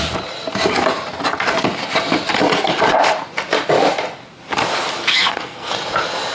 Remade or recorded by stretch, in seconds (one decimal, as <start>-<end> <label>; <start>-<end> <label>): 0.0-5.1 recorded; 5.1-5.7 remade; 5.7-6.3 recorded